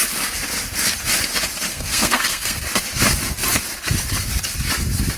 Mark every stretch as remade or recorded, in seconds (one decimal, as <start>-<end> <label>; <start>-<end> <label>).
0.0-1.7 recorded; 1.7-2.6 remade; 2.6-5.2 recorded